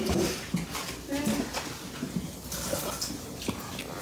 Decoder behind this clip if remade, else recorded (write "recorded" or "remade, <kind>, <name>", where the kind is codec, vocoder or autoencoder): recorded